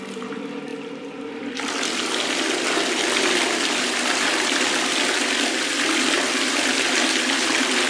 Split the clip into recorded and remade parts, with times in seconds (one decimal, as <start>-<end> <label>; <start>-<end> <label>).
0.0-7.9 recorded